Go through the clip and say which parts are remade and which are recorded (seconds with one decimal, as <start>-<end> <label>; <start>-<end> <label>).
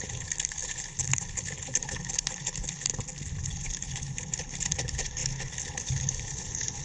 0.0-2.9 remade; 2.9-3.5 recorded; 3.5-6.8 remade